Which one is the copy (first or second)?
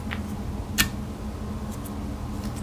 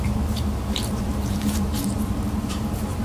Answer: second